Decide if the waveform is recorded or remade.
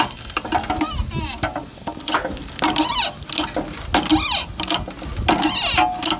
recorded